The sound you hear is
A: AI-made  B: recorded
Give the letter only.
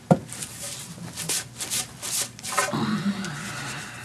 B